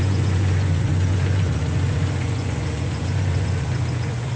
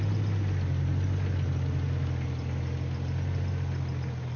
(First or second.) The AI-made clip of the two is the first